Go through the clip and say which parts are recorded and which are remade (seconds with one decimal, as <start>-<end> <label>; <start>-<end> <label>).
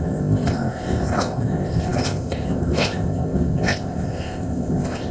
0.0-5.1 remade